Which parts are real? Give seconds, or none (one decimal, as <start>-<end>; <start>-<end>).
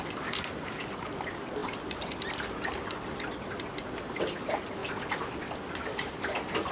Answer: 0.0-6.7